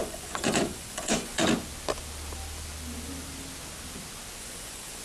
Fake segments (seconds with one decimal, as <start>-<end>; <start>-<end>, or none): 0.0-1.4; 4.4-5.0